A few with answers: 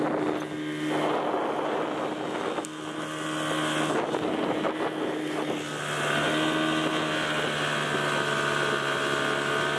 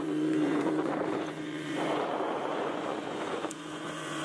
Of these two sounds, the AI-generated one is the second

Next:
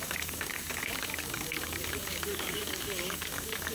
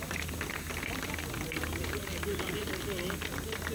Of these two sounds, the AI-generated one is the first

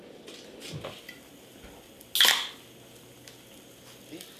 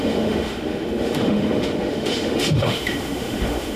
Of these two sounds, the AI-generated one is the second